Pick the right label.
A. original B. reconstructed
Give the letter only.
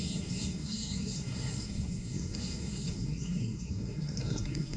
B